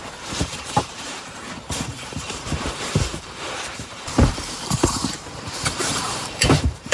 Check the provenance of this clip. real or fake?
fake